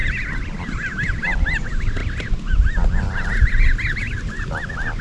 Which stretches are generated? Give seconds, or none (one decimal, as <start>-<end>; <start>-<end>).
none